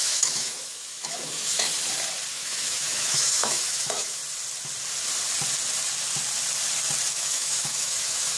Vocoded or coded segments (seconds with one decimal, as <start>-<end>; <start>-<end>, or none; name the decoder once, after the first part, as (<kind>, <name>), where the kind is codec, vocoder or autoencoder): 0.0-1.7 (autoencoder, DAC-VAE); 2.3-4.2; 7.1-8.4